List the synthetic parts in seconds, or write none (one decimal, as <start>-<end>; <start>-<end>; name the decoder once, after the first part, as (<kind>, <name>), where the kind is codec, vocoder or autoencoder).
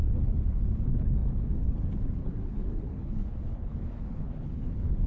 0.0-5.1 (codec, HILCodec)